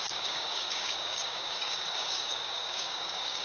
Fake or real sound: fake